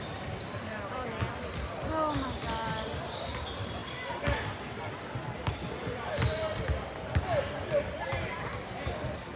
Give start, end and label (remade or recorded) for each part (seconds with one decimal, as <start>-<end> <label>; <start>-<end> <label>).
0.0-3.8 remade; 3.8-8.8 recorded; 8.8-9.4 remade